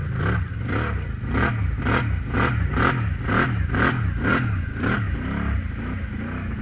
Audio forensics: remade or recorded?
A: recorded